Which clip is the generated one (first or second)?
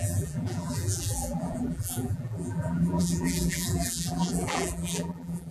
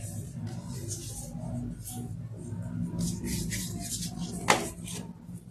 first